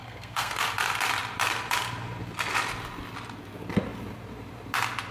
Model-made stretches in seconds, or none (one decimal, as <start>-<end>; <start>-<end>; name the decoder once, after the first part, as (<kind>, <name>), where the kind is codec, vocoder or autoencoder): 0.0-0.5 (codec, SNAC)